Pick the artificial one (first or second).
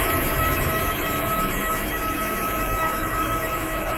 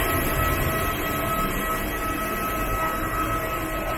first